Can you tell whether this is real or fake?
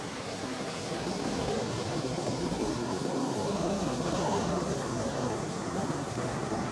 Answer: fake